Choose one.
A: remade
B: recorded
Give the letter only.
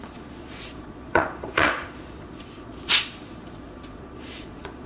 A